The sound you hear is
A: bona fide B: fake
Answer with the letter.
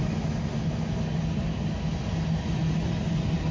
A